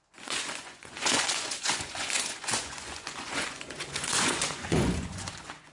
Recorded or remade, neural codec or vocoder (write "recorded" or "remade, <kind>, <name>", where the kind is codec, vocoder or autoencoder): remade, vocoder, Vocos